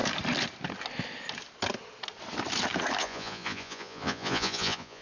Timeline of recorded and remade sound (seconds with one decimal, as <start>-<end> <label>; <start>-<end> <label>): 0.0-3.0 recorded; 3.0-5.0 remade